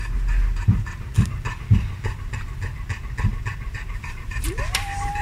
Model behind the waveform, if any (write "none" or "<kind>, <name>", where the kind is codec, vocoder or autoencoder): none